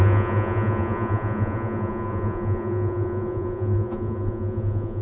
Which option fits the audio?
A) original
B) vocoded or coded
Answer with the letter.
B